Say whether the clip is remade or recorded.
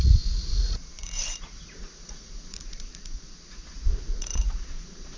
remade